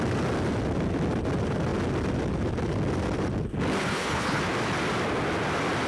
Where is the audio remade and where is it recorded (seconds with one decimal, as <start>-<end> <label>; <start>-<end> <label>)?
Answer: 0.0-3.8 recorded; 3.8-4.4 remade; 4.4-5.9 recorded